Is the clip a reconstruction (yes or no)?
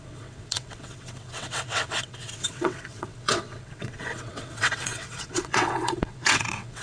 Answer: yes